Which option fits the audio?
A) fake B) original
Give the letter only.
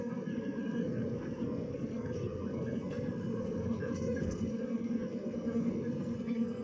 A